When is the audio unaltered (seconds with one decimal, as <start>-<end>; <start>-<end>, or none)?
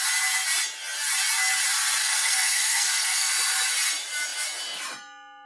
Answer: 0.0-2.0; 3.3-5.5